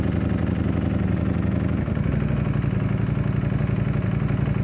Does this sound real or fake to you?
real